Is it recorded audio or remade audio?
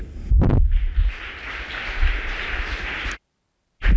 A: recorded